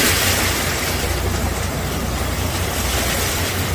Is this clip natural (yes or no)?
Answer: yes